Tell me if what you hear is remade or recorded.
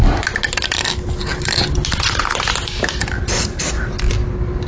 recorded